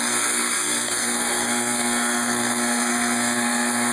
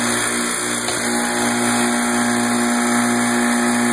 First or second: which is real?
second